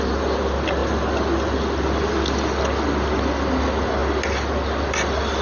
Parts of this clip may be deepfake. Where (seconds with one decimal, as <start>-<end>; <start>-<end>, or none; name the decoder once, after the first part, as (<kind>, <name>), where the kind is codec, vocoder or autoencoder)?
none